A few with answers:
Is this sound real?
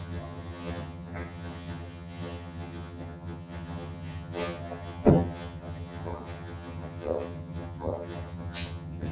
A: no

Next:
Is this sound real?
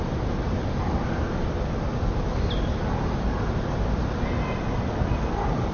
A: yes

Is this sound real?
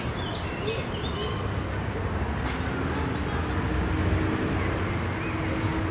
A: yes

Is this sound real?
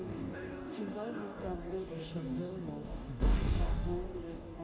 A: no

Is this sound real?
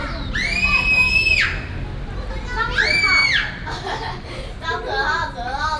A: yes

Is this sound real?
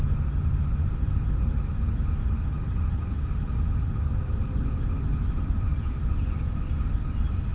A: yes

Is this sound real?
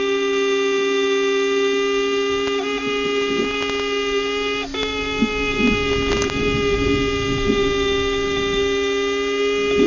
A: yes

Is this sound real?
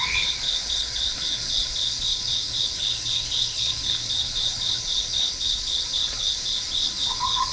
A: no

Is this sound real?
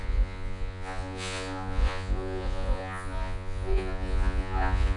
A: no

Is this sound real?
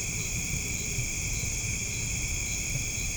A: no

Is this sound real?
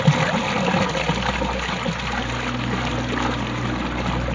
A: yes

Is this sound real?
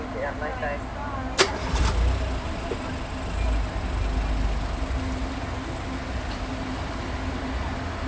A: yes